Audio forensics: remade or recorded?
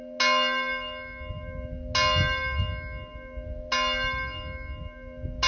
recorded